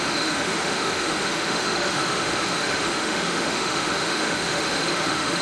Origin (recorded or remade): remade